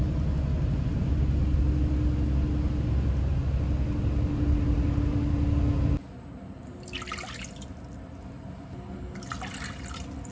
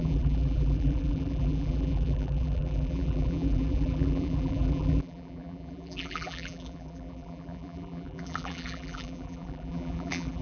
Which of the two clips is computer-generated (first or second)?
second